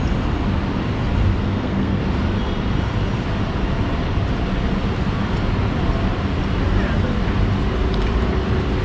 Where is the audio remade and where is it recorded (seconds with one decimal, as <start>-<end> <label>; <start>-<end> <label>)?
0.0-1.3 recorded; 1.3-2.0 remade; 2.0-8.8 recorded